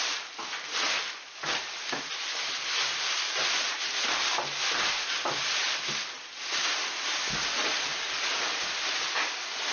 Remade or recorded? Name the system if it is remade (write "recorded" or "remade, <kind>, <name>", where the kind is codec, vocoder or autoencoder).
recorded